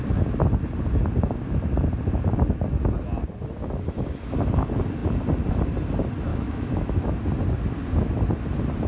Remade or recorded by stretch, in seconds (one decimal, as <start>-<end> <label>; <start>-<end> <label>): 0.0-6.3 recorded; 6.3-7.2 remade; 7.2-8.9 recorded